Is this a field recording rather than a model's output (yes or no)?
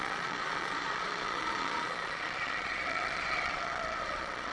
no